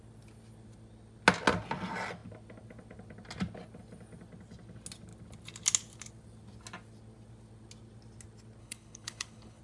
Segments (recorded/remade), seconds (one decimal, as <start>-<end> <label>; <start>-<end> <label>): 0.0-8.6 recorded; 8.6-9.6 remade